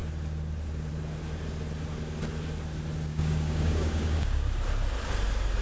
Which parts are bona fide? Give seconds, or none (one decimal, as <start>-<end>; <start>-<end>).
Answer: 0.0-3.1; 4.5-5.6